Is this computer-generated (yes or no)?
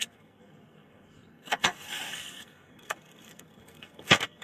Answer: yes